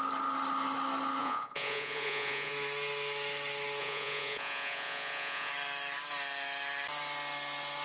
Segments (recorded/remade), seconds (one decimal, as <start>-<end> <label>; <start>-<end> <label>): 0.0-1.2 recorded; 1.2-2.5 remade; 2.5-3.8 recorded; 3.8-5.5 remade; 5.5-7.8 recorded